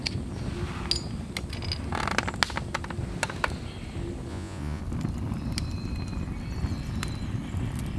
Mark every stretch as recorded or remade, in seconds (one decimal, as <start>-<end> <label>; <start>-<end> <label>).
0.0-4.3 recorded; 4.3-4.8 remade; 4.8-8.0 recorded